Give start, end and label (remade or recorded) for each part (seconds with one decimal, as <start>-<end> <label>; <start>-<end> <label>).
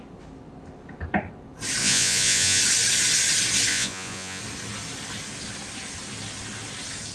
0.0-1.8 recorded; 1.8-2.6 remade; 2.6-3.7 recorded; 3.7-4.4 remade; 4.4-7.1 recorded